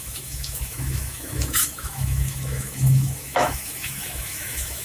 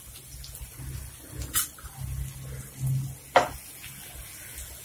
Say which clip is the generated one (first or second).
first